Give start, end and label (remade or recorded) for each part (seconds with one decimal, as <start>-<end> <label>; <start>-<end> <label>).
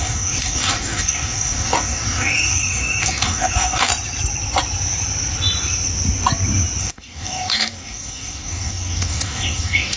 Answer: 0.0-3.9 remade; 3.9-6.8 recorded; 6.8-10.0 remade